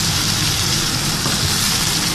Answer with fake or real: fake